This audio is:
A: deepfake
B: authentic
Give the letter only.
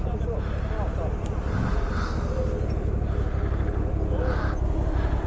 B